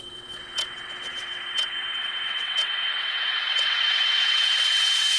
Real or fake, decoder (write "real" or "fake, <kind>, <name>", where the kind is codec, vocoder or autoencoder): fake, vocoder, WaveNeXt